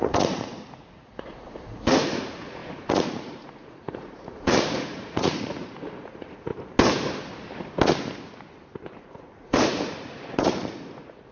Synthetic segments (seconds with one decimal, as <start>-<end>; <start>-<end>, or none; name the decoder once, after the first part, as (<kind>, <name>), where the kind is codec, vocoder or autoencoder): 0.0-6.5 (vocoder, Vocos); 9.0-11.3